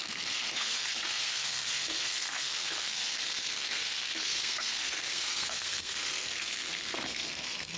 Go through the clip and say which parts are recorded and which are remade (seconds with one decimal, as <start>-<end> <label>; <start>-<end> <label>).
0.0-7.8 remade